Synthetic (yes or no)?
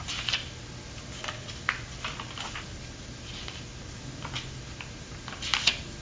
no